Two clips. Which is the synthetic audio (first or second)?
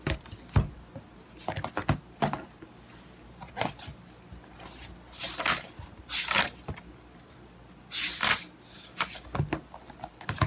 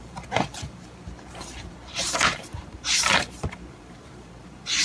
second